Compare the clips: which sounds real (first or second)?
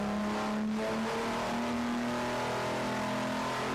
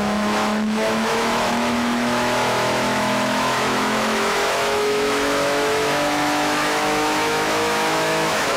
first